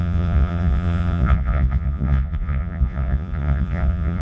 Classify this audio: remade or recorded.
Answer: remade